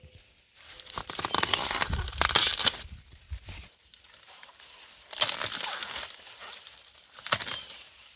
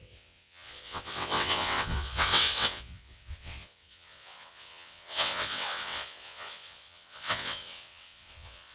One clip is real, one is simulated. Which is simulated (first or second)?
second